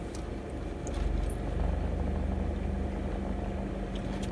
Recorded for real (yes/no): yes